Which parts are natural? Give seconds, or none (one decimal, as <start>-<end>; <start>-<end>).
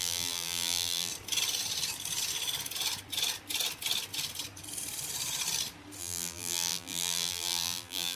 1.1-6.0